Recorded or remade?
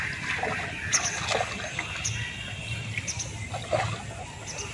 recorded